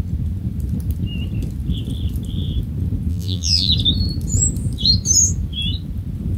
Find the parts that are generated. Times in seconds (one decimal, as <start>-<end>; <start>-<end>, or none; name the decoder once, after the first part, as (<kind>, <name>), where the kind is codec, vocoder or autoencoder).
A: 3.1-3.7 (vocoder, BigVGAN v2)